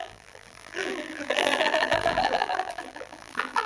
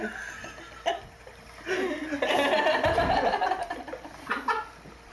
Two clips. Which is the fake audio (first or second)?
first